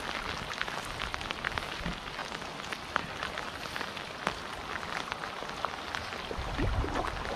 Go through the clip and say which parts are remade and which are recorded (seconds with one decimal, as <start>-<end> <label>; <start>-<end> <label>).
0.0-7.4 recorded

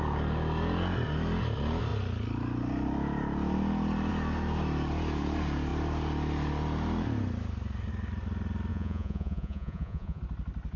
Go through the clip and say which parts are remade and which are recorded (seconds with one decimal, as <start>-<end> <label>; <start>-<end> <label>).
0.0-8.7 recorded; 8.7-10.2 remade; 10.2-10.8 recorded